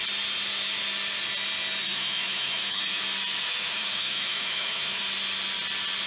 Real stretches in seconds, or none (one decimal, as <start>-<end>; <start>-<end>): 0.0-1.8; 3.0-3.4; 5.0-6.1

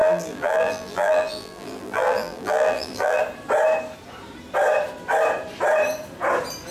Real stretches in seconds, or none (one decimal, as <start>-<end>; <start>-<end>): 3.2-6.7

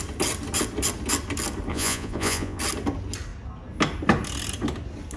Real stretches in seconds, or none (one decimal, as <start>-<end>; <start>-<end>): 0.0-1.7; 2.6-5.2

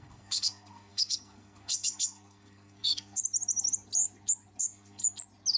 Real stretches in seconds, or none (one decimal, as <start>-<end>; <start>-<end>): 3.2-4.6; 5.0-5.6

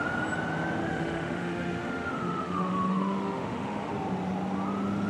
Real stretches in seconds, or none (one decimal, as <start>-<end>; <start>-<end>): 0.0-0.8; 3.9-5.1

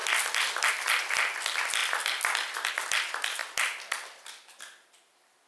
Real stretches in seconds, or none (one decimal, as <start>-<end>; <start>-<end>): 0.0-5.5

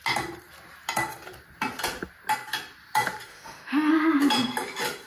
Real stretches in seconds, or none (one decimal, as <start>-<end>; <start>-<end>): 0.0-3.3; 3.9-5.1

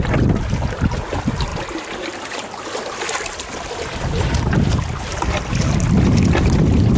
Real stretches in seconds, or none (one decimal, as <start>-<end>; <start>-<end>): 0.0-7.0